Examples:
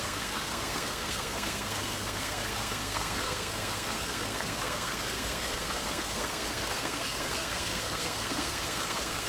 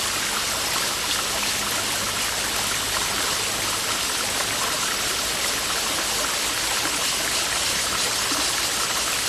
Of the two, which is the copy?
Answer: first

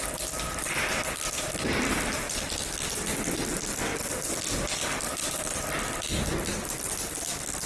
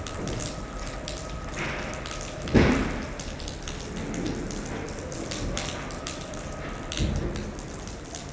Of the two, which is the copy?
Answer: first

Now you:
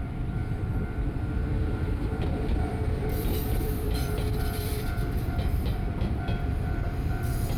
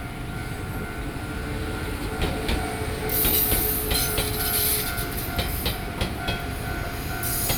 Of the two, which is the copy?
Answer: first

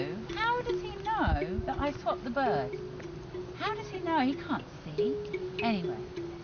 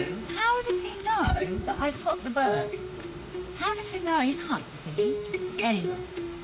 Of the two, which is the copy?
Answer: second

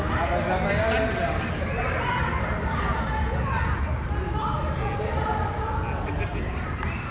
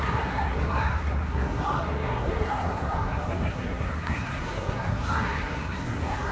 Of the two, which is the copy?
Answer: second